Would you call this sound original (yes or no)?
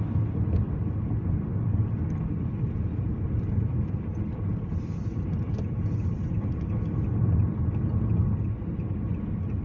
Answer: yes